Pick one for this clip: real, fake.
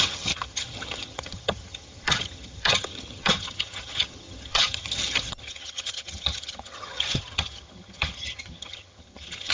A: fake